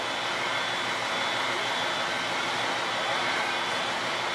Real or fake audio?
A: real